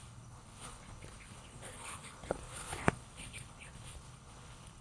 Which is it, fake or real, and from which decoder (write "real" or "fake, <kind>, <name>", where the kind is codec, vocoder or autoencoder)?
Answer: fake, codec, HILCodec